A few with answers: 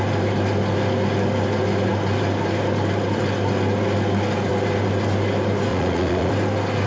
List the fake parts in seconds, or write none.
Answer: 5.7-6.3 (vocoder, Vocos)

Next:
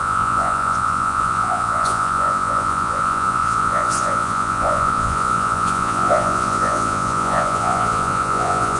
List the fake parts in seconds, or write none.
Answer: 0.0-8.8 (vocoder, Vocos)

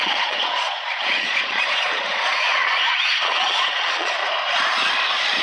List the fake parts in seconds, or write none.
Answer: 0.0-4.2 (vocoder, Vocos)

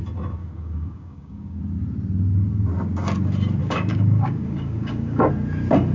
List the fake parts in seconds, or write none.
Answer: 0.4-1.6 (codec, DAC); 3.6-5.3

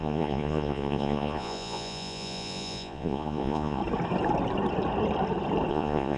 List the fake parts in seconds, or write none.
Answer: 0.0-3.8 (vocoder, Vocos); 5.7-6.2

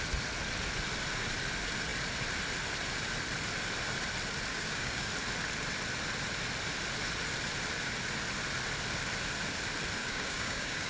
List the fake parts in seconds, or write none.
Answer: 4.5-5.1 (codec, DAC); 10.0-10.9

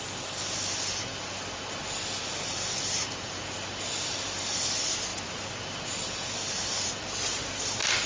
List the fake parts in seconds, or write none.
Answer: none

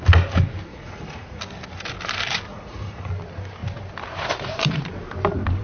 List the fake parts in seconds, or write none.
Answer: 0.7-1.4 (vocoder, Vocos); 2.5-3.1